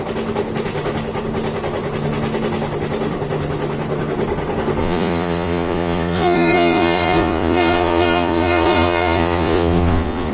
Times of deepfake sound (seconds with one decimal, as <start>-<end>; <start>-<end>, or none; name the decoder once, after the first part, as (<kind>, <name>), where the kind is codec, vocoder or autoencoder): 4.8-10.3 (vocoder, Vocos)